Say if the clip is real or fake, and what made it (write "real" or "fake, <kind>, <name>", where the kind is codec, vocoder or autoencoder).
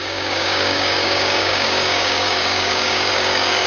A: fake, codec, DAC